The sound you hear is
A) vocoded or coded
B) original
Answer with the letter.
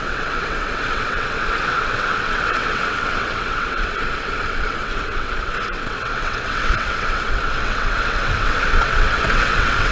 A